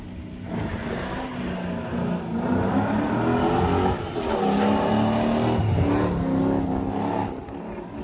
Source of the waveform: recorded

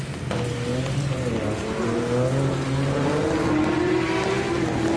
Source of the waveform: recorded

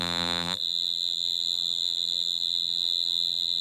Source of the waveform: remade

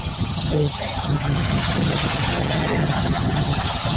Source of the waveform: remade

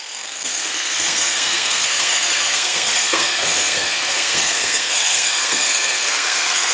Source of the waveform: remade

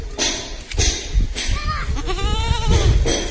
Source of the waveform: recorded